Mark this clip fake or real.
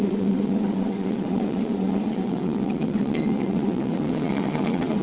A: fake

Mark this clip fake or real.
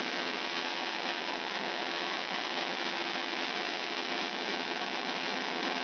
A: fake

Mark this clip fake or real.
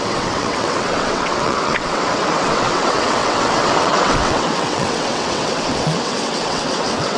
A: fake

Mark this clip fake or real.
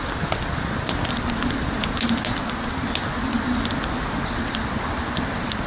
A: real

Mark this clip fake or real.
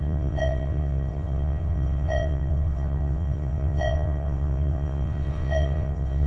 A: fake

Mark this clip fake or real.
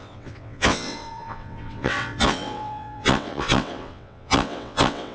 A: fake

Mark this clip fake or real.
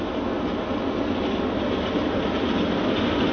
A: real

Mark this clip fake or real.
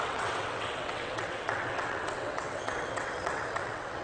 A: fake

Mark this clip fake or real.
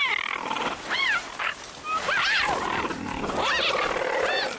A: real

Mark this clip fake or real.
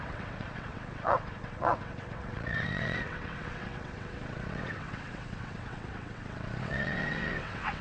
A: fake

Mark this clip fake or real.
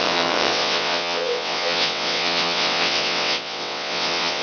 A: fake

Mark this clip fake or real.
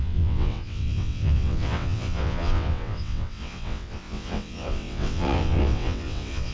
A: fake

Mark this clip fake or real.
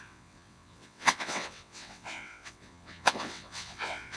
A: fake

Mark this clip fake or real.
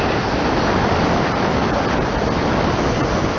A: real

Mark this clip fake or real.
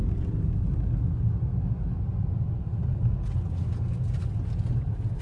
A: real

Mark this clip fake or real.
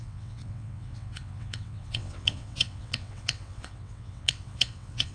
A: fake